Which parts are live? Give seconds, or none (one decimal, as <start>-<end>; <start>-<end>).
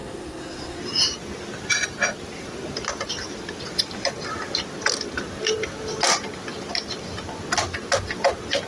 0.8-8.7